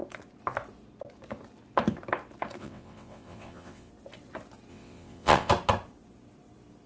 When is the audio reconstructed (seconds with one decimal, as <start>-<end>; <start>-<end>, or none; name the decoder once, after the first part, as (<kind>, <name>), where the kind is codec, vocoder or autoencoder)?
2.6-3.9 (vocoder, WaveNeXt); 4.7-5.5